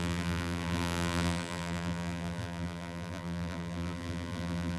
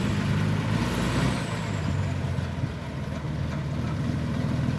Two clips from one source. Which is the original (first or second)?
second